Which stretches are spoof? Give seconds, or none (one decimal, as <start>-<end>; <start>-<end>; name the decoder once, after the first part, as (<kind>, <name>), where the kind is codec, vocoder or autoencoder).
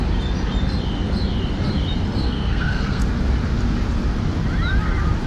2.2-3.0 (codec, SNAC)